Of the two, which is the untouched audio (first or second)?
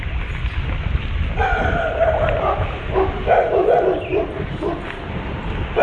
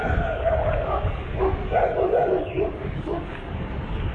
first